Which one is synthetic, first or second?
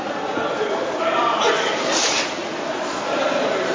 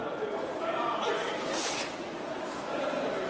first